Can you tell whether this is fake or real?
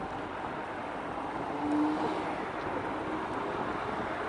real